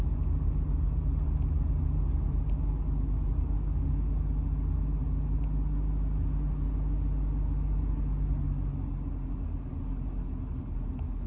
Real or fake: real